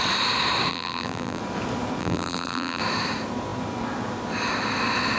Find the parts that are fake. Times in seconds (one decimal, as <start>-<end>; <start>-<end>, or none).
0.7-1.4; 2.0-2.8